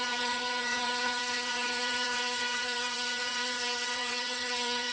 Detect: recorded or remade remade